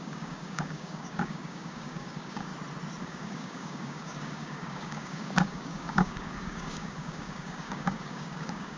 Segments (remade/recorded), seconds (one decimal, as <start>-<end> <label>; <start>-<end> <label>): 0.0-2.5 remade; 2.5-3.0 recorded; 3.0-8.8 remade